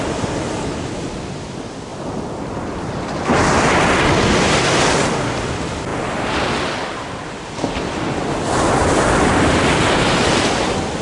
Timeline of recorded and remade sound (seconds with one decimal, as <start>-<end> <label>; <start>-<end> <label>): 0.0-11.0 recorded